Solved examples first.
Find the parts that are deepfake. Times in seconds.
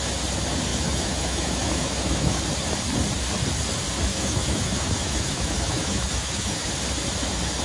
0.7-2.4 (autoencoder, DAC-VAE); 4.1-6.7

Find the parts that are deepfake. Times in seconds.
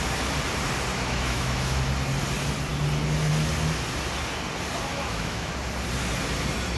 0.9-1.9 (autoencoder, DAC-VAE); 4.9-5.5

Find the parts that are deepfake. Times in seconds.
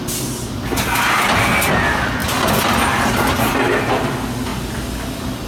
none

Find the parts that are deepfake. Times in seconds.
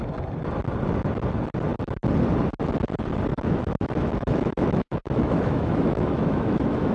3.3-6.9 (autoencoder, DAC-VAE)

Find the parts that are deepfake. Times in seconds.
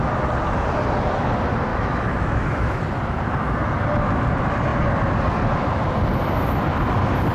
1.7-2.8 (autoencoder, DAC-VAE)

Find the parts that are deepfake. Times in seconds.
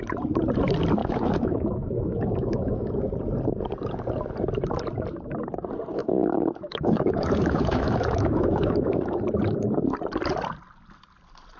1.0-2.9 (autoencoder, DAC-VAE); 6.0-9.2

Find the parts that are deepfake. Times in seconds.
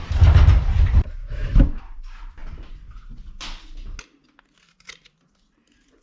1.2-1.8 (autoencoder, DAC-VAE)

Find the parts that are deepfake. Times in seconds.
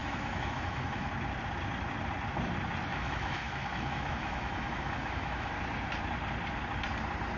0.0-1.1 (autoencoder, DAC-VAE); 2.9-5.5